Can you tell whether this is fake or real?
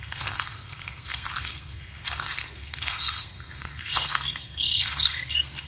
fake